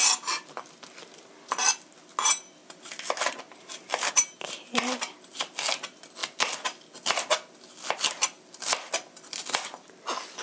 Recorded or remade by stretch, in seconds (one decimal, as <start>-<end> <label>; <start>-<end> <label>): 0.0-10.4 recorded